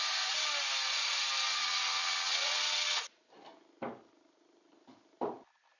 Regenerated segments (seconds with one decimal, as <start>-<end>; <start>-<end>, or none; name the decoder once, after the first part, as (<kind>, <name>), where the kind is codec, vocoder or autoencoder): 1.5-3.0 (vocoder, WaveNeXt)